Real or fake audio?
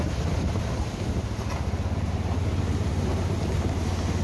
real